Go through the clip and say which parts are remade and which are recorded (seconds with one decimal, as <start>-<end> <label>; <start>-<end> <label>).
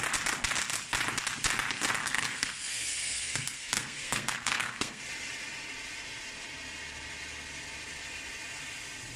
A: 0.0-2.0 recorded; 2.0-5.0 remade; 5.0-9.2 recorded